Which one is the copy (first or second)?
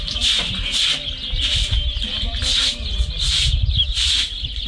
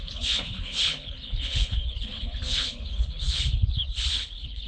second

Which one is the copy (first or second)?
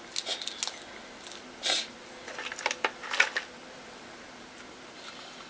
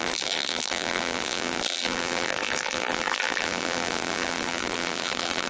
second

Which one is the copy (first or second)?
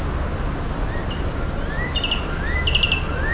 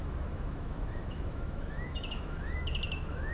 second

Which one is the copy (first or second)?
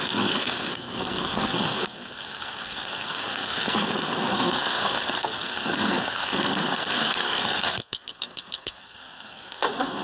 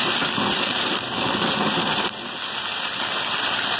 first